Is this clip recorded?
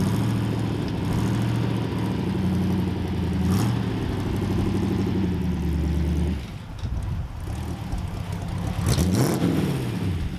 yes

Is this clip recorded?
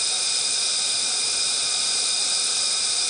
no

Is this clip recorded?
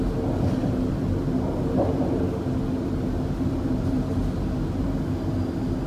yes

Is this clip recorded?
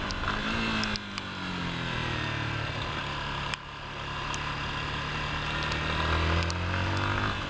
yes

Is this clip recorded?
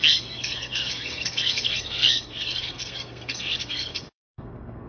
no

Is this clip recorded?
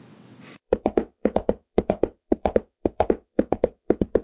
no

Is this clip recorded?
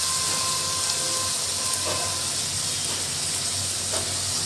yes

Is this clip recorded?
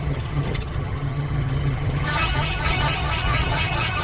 no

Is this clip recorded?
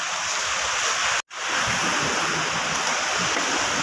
yes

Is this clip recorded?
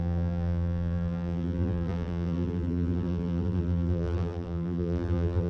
no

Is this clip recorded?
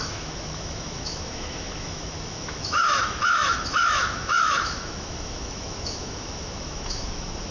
no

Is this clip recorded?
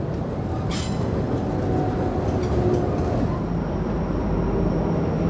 yes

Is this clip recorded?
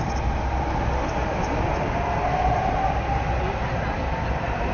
yes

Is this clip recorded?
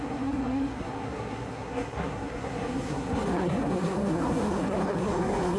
no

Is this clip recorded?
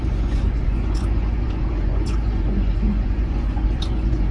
no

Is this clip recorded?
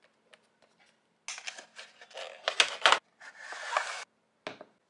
yes